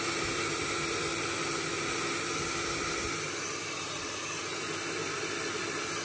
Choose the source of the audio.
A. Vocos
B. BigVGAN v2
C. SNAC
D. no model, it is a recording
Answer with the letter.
D